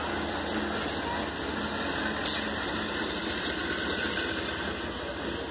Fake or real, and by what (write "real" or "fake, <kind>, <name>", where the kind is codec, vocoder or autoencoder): real